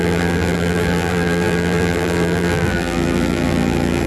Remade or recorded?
remade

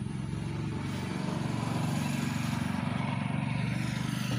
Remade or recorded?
recorded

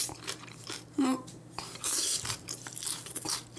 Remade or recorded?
remade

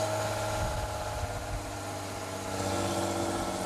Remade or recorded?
recorded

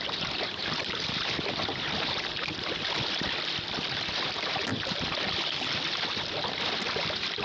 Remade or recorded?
remade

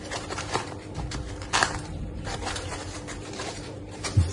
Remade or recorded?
remade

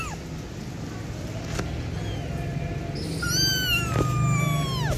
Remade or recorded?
recorded